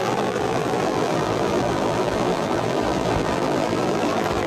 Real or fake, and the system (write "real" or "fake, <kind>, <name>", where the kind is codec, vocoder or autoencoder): fake, vocoder, BigVGAN v2